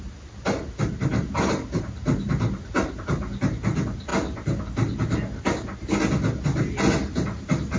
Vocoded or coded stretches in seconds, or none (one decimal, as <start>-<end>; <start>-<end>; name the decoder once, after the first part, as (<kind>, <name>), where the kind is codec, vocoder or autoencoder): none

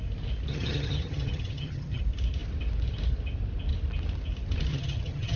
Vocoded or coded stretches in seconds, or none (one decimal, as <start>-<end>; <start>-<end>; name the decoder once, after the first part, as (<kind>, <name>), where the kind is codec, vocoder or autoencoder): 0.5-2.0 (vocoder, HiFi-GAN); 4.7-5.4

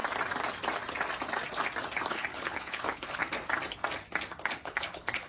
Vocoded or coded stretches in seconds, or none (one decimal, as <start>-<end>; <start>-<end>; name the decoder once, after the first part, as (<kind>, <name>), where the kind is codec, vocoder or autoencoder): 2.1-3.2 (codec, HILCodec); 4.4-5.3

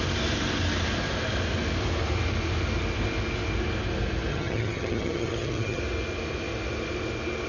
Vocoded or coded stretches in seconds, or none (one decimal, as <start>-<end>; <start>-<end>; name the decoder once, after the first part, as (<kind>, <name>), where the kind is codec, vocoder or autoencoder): 4.3-5.8 (vocoder, HiFi-GAN)

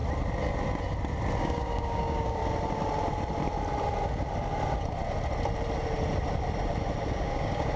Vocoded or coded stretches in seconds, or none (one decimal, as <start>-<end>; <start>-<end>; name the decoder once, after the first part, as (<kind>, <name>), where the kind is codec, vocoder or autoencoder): 1.4-2.4 (codec, DAC); 7.1-7.8

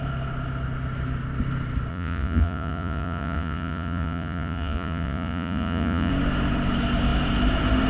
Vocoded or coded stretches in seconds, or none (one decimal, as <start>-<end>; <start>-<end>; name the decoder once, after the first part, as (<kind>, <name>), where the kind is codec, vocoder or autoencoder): 1.9-6.1 (vocoder, Vocos)